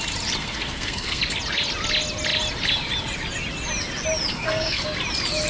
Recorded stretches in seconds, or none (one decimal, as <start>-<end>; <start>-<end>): 0.0-0.4; 1.2-4.3; 4.8-5.5